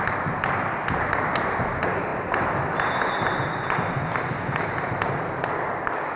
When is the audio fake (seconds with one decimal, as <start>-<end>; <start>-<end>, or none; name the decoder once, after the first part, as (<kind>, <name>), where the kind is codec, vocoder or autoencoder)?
none